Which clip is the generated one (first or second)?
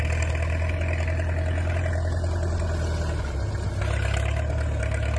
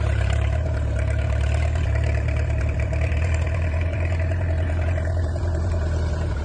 second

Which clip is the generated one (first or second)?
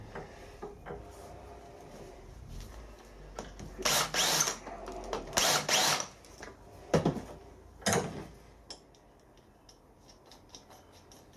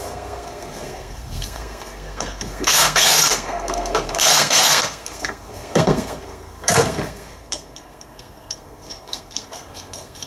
second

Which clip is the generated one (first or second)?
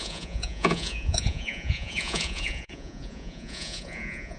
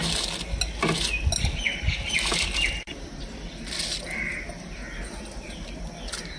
first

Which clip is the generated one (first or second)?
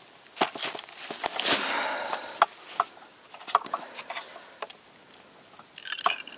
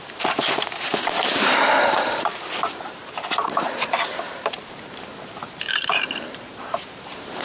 second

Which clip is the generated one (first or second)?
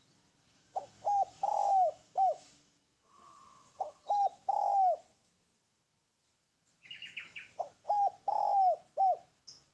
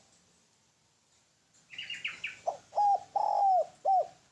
first